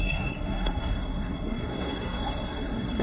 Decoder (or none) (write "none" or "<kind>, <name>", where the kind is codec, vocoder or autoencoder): codec, SNAC